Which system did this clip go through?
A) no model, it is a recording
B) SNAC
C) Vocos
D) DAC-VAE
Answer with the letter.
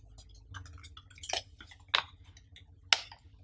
A